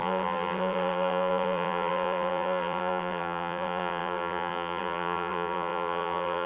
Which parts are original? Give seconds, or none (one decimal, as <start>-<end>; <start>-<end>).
none